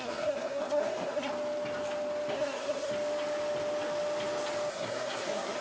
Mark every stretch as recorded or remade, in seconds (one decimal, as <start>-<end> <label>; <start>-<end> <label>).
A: 0.0-1.3 remade; 1.3-2.3 recorded; 2.3-2.9 remade; 2.9-4.7 recorded; 4.7-5.6 remade